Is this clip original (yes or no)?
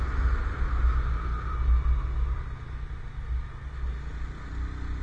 yes